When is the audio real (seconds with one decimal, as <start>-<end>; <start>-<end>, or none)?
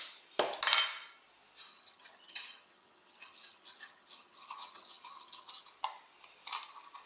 0.0-1.7; 5.6-7.1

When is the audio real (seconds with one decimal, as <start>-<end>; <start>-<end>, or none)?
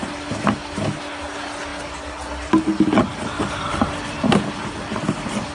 0.0-5.5